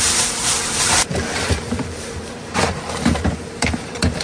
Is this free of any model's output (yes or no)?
no